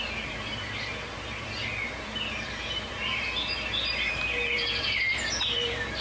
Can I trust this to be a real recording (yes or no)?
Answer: no